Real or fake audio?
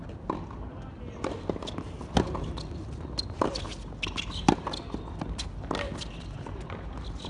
real